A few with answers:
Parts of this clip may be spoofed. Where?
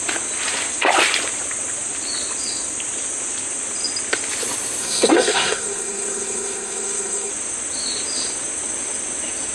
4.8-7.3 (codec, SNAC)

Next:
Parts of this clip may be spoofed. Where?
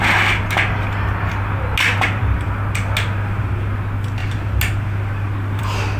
none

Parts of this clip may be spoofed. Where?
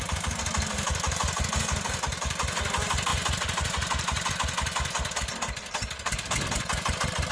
none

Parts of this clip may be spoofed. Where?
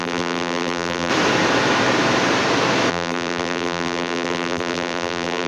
0.0-1.1 (vocoder, BigVGAN v2); 2.9-5.5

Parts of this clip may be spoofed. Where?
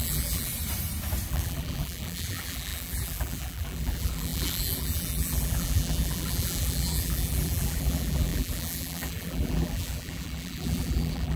0.0-0.5 (vocoder, BigVGAN v2); 1.3-11.4